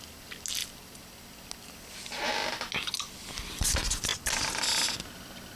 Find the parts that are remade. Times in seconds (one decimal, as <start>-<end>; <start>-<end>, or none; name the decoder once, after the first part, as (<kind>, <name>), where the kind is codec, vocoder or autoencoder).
none